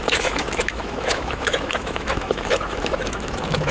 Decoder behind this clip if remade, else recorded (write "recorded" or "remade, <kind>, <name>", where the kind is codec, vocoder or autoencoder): remade, autoencoder, DAC-VAE